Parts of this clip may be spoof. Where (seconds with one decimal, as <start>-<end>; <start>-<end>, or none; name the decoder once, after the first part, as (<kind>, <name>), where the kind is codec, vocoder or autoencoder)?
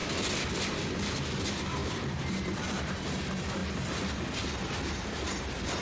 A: 1.8-3.0 (vocoder, BigVGAN v2)